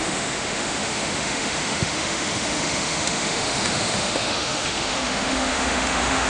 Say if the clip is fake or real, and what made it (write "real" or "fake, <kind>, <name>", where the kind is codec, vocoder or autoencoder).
fake, autoencoder, DAC-VAE